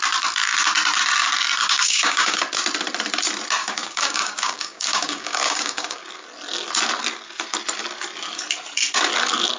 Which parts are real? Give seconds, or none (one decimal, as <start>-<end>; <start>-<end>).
0.0-1.6; 2.4-3.6; 6.0-9.6